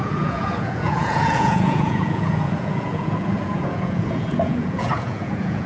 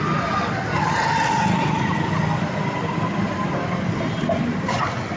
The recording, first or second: second